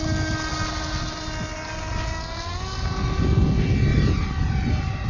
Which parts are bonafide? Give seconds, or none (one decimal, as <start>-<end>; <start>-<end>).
0.0-3.9